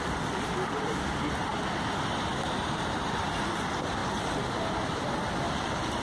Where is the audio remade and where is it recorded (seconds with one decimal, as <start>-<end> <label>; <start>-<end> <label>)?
0.0-1.5 remade; 1.5-3.2 recorded; 3.2-4.0 remade; 4.0-4.6 recorded; 4.6-6.0 remade